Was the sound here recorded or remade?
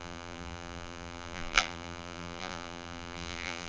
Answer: remade